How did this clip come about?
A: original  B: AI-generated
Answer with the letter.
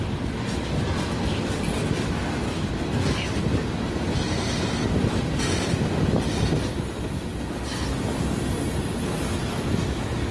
A